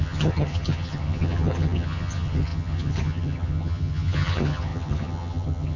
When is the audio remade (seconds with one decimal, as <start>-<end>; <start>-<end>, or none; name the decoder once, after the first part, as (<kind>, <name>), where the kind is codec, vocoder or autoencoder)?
0.0-5.8 (vocoder, HiFi-GAN)